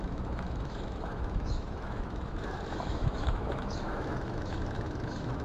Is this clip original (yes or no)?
no